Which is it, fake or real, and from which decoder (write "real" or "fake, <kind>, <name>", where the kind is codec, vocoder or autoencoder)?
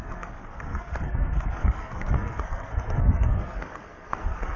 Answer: fake, codec, SNAC